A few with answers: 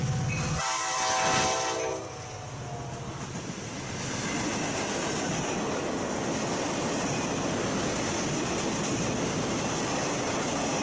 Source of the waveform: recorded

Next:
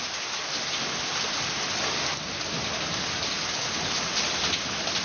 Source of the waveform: recorded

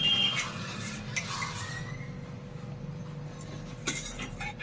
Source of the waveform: recorded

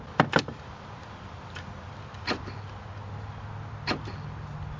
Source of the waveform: recorded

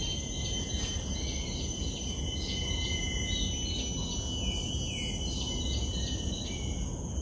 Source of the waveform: recorded